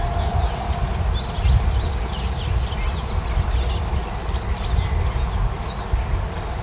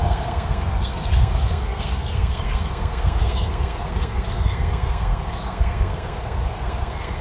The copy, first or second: second